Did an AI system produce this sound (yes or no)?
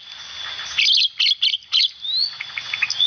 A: no